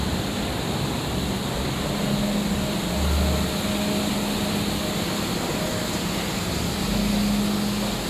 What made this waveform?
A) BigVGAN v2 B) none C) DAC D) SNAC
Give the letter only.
B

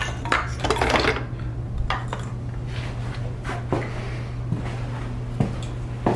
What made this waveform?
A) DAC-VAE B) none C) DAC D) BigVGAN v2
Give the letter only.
B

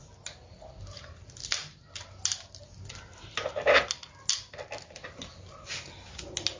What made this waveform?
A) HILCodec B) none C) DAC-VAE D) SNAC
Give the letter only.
B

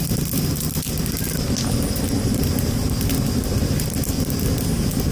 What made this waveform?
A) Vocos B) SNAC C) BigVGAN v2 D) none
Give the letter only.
D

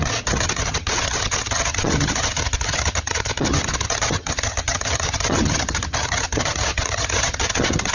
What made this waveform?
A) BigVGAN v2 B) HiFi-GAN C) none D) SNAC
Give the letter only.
B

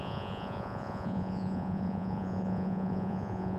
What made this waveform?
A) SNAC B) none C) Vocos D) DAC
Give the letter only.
C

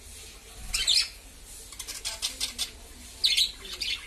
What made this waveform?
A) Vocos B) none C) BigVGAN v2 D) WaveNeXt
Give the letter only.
B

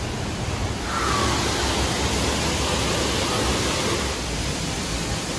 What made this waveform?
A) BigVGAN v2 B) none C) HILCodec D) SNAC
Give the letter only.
B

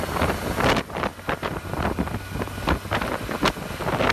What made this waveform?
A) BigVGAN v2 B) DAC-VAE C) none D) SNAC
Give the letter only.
C